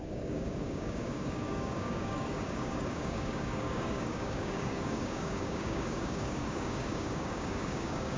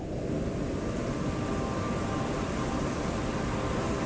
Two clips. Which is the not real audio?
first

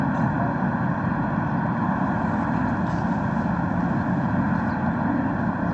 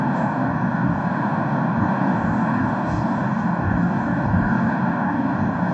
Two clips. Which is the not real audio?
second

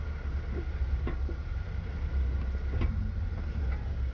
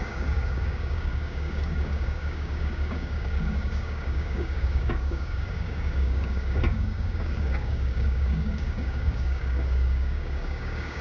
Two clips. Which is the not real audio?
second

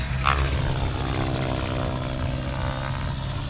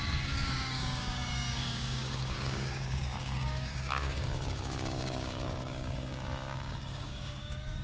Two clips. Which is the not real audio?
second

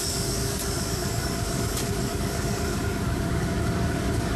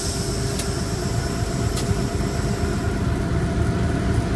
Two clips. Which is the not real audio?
first